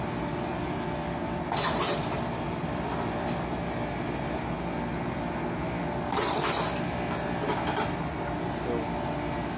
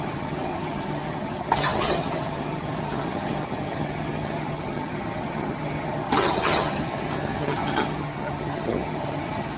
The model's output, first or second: second